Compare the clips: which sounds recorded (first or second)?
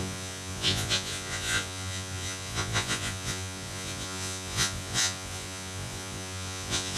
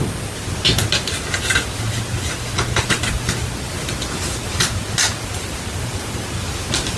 second